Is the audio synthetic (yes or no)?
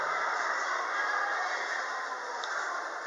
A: yes